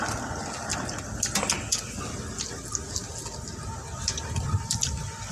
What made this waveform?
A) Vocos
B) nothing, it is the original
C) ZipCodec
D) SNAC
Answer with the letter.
B